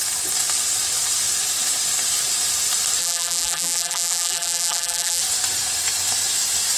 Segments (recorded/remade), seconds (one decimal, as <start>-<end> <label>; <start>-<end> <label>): 0.0-3.0 recorded; 3.0-5.2 remade; 5.2-6.8 recorded